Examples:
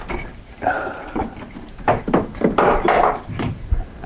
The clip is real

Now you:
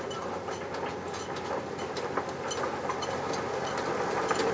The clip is real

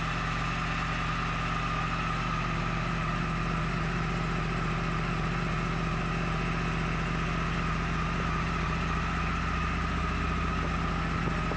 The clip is real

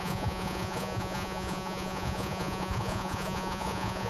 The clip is fake